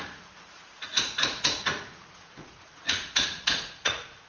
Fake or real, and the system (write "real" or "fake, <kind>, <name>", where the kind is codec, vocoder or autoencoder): fake, vocoder, Vocos